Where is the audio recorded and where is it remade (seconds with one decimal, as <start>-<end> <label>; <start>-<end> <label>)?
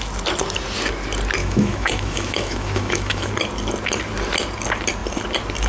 0.0-1.4 recorded; 1.4-3.3 remade; 3.3-5.7 recorded